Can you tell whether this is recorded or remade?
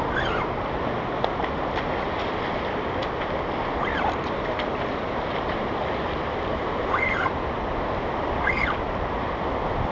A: recorded